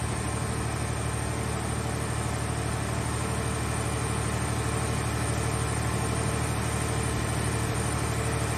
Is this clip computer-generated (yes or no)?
no